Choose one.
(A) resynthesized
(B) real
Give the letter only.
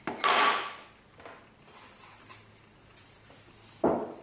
B